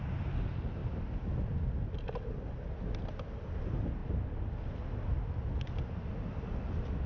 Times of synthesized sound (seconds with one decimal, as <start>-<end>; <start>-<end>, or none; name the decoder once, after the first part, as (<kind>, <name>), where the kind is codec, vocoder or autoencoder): none

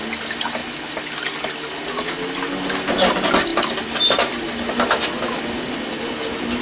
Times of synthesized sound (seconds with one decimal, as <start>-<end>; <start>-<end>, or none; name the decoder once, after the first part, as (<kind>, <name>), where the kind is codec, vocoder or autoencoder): none

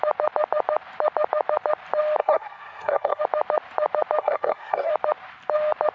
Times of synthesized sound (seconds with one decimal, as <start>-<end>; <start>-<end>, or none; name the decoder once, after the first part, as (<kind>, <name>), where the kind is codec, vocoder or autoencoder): 2.2-3.2 (codec, SNAC); 4.2-4.9

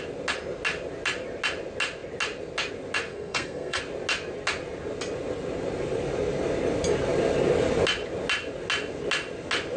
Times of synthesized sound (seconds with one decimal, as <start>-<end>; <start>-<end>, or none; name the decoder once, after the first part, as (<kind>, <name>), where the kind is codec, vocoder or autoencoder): 3.1-3.8 (codec, SNAC)

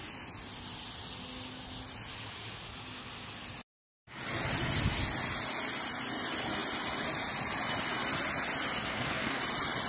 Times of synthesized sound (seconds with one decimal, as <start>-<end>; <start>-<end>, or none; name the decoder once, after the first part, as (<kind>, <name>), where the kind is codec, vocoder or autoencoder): 8.9-9.4 (codec, SNAC)

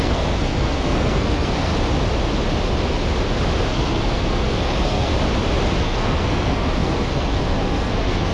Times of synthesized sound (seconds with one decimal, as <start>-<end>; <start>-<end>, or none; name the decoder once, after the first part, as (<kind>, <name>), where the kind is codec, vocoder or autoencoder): 0.0-1.7 (codec, SNAC); 3.7-5.1; 5.8-8.3